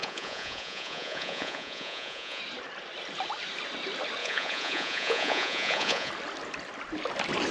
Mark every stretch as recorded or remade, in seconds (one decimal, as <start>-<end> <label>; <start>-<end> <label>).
0.0-2.4 remade; 2.4-4.2 recorded; 4.2-6.1 remade; 6.1-7.5 recorded